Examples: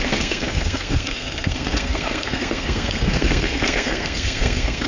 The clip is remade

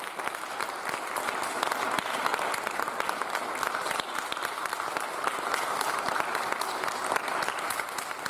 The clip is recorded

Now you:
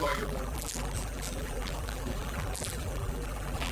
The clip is remade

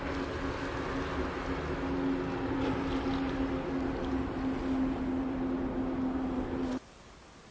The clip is recorded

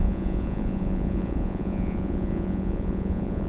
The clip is remade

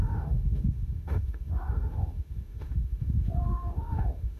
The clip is remade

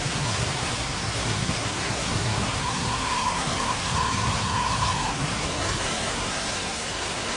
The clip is remade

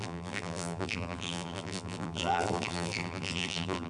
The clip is remade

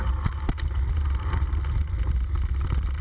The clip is recorded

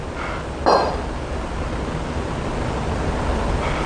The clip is recorded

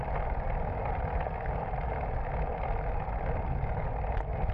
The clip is recorded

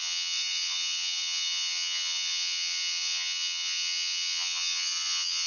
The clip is remade